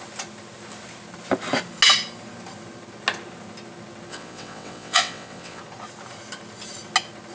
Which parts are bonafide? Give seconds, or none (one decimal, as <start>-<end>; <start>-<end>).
0.0-4.1; 5.6-7.3